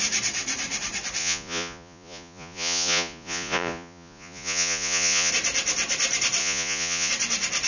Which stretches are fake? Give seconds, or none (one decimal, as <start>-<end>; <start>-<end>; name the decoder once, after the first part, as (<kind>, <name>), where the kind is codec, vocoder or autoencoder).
1.2-5.3 (vocoder, Vocos); 6.4-7.1

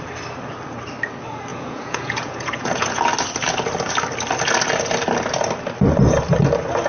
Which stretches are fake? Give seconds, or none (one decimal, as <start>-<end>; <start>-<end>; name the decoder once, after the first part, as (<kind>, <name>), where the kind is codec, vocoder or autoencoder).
1.5-3.0 (vocoder, Vocos)

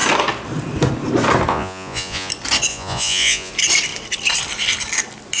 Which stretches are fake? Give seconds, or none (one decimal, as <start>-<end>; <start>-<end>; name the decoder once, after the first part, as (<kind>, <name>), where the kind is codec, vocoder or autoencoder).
1.5-2.3 (vocoder, Vocos); 2.7-3.5

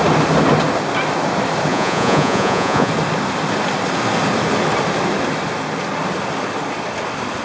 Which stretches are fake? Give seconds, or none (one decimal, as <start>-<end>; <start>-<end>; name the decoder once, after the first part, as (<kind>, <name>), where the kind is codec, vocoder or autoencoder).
1.7-2.9 (vocoder, Vocos)

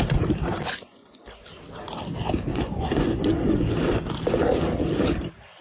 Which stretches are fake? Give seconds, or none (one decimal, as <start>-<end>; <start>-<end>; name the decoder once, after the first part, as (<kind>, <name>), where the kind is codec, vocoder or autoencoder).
0.5-1.2 (vocoder, Vocos); 2.5-4.0

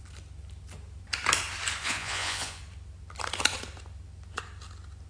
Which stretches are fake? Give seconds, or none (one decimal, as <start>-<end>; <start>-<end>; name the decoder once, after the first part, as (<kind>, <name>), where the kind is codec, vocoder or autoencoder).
1.8-2.6 (vocoder, Vocos)

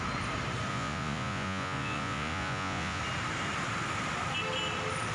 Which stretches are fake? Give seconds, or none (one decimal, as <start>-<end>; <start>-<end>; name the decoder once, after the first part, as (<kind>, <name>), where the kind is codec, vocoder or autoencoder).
0.7-3.0 (vocoder, Vocos)